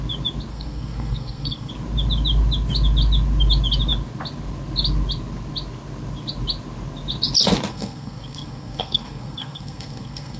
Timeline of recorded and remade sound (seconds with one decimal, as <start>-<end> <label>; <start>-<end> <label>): 0.0-0.5 recorded; 0.5-1.7 remade; 1.7-7.7 recorded; 7.7-10.4 remade